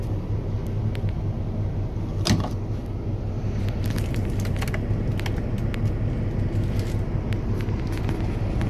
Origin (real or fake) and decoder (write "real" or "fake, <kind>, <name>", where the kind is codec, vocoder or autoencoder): real